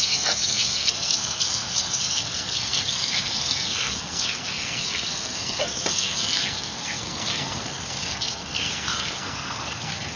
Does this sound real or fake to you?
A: fake